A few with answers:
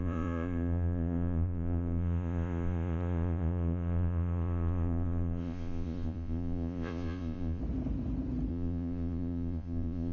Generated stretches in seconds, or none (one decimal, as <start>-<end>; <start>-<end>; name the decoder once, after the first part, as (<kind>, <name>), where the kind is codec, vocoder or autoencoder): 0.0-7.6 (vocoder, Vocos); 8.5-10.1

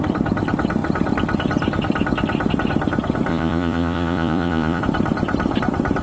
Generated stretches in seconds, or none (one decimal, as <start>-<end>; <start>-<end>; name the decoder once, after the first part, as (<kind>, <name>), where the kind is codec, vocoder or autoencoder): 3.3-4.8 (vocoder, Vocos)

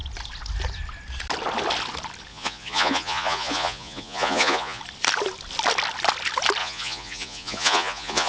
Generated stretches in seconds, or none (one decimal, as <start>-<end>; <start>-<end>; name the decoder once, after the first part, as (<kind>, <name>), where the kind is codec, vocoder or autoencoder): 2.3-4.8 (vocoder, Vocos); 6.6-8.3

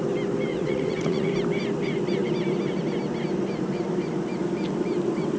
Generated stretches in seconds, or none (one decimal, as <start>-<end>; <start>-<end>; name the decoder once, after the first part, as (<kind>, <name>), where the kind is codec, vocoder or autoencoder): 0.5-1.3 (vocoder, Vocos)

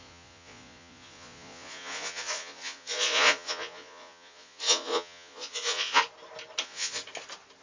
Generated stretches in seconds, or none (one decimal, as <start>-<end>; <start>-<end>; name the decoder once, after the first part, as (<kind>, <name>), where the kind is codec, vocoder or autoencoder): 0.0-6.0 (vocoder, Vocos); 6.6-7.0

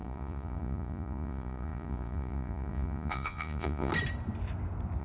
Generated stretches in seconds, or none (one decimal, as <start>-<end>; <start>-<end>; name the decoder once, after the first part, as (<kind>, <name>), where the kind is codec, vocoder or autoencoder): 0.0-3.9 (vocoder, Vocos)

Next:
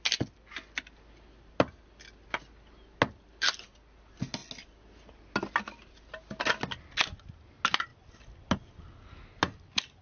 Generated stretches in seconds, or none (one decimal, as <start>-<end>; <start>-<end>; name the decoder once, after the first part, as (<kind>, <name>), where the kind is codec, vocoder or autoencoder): none

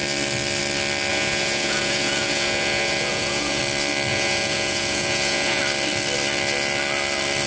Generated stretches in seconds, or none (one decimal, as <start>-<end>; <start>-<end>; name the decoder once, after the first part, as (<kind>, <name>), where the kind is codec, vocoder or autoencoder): 1.1-3.6 (vocoder, Vocos); 4.1-5.6